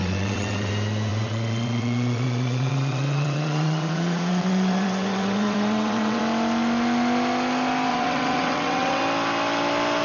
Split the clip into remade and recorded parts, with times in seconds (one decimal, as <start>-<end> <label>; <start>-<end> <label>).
0.0-0.7 remade; 0.7-1.1 recorded; 1.1-6.2 remade; 6.2-7.9 recorded; 7.9-9.0 remade; 9.0-10.0 recorded

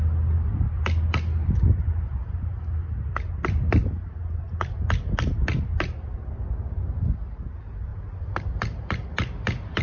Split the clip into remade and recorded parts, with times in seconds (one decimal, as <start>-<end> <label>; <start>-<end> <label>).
0.0-7.9 recorded; 7.9-8.5 remade; 8.5-9.8 recorded

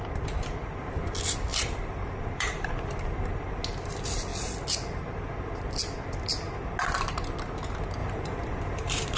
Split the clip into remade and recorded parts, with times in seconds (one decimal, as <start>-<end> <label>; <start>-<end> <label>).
0.0-1.5 recorded; 1.5-2.7 remade; 2.7-8.0 recorded; 8.0-9.2 remade

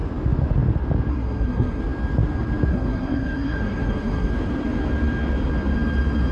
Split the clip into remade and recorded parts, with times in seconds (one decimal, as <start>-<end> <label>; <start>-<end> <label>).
0.0-1.1 recorded; 1.1-1.8 remade; 1.8-2.7 recorded; 2.7-4.3 remade; 4.3-6.3 recorded